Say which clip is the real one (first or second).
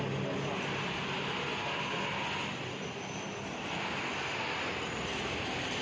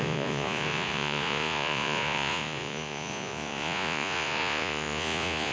first